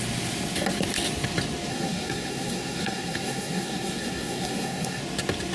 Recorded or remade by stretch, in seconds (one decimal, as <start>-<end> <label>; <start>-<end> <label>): 0.0-1.7 recorded; 1.7-5.0 remade; 5.0-5.5 recorded